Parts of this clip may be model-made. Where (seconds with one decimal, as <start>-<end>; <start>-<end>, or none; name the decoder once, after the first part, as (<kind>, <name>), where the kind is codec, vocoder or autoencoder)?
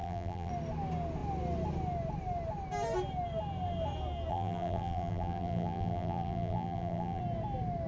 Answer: 0.0-0.5 (vocoder, BigVGAN v2); 4.3-7.2